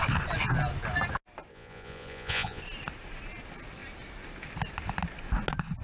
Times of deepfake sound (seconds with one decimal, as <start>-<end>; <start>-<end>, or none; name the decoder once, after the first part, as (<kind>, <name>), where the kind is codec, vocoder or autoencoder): 1.5-2.6 (vocoder, Vocos)